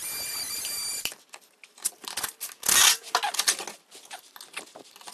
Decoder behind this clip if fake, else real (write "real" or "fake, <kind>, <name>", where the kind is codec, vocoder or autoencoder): real